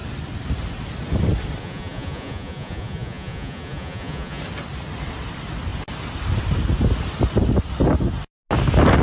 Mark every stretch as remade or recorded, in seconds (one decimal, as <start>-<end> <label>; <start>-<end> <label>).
0.0-1.6 recorded; 1.6-4.4 remade; 4.4-9.0 recorded